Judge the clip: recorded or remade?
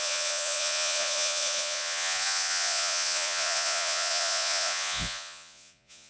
remade